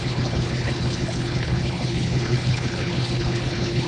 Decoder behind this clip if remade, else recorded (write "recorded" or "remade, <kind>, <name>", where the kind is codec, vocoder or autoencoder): remade, codec, HILCodec